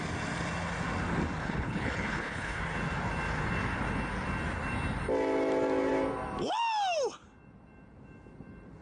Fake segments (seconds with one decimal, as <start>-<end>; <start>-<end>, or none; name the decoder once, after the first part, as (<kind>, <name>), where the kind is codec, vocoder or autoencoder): 1.4-2.6 (codec, HILCodec)